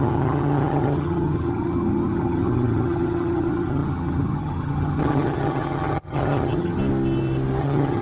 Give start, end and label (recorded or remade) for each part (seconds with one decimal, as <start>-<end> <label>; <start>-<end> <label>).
0.0-6.8 remade; 6.8-7.6 recorded; 7.6-8.0 remade